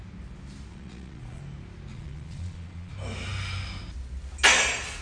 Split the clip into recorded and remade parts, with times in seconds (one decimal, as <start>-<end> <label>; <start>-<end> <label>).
0.0-0.7 recorded; 0.7-1.4 remade; 1.4-1.9 recorded; 1.9-2.9 remade; 2.9-5.0 recorded